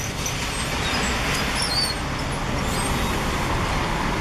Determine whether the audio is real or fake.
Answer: real